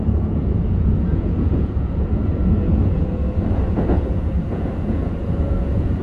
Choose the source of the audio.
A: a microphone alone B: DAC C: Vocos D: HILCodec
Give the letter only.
C